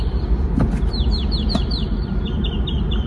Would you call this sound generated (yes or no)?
no